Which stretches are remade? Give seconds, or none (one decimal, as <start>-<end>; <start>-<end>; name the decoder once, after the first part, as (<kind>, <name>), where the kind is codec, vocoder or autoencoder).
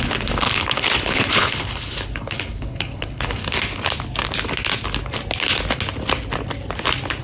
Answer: 0.0-3.4 (codec, HILCodec)